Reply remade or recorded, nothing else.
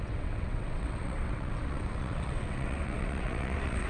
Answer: remade